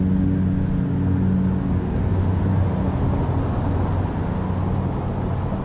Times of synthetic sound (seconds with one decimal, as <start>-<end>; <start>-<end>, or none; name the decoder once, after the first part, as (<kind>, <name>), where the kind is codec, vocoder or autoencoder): none